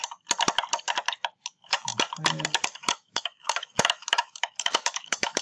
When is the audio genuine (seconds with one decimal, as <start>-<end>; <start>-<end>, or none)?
0.0-1.5; 1.9-2.8

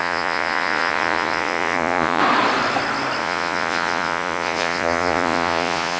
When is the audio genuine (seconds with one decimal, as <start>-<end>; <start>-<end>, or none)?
2.2-3.2